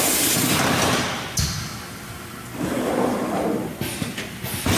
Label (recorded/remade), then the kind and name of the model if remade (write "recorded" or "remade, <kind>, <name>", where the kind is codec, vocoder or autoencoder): recorded